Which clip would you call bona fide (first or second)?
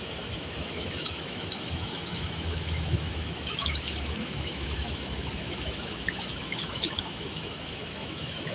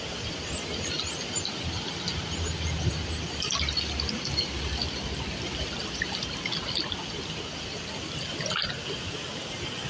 second